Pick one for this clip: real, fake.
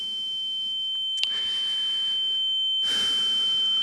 real